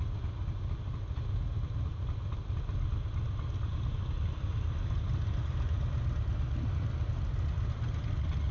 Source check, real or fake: real